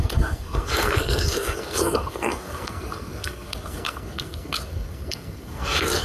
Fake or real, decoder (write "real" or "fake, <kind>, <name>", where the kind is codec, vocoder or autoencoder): fake, codec, SNAC